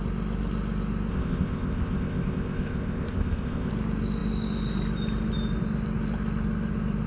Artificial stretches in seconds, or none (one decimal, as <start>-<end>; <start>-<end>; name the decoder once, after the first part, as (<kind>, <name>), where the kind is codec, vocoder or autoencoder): 1.1-3.7 (codec, ZipCodec)